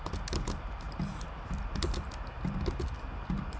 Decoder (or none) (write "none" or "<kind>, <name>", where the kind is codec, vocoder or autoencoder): none